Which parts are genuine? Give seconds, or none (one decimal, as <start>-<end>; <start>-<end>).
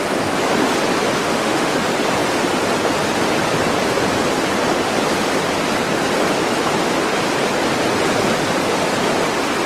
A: 0.0-1.2; 1.8-9.7